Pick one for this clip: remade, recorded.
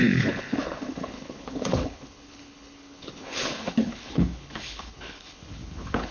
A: remade